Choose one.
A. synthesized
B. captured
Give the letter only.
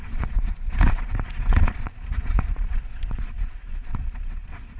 A